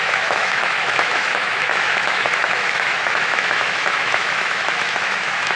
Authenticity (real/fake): fake